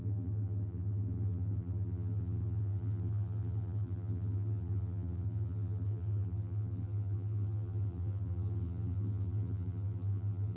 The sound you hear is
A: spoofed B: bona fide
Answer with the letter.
A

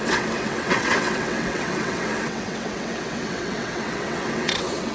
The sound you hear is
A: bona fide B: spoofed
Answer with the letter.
B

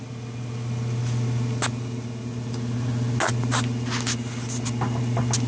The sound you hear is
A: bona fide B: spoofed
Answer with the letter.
A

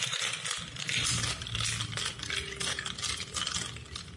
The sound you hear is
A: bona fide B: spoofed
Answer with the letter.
A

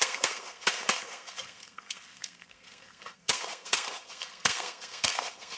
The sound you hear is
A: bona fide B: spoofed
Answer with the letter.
B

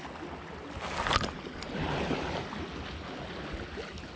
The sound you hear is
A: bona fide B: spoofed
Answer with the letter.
A